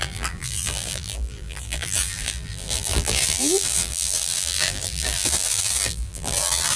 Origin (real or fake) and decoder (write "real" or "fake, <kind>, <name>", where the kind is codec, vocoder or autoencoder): fake, vocoder, BigVGAN v2